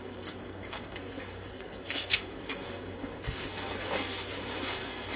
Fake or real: fake